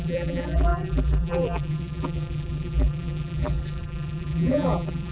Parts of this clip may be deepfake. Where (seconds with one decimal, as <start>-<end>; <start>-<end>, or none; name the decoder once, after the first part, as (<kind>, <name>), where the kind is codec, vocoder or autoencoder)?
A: 0.0-5.1 (vocoder, BigVGAN v2)